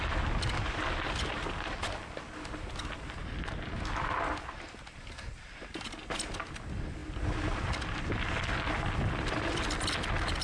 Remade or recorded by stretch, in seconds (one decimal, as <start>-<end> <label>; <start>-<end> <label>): 0.0-10.4 recorded